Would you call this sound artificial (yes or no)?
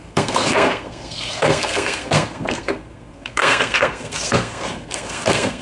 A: yes